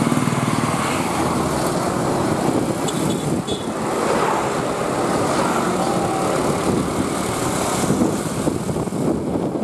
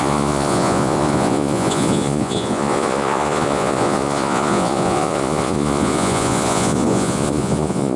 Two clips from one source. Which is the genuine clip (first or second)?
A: first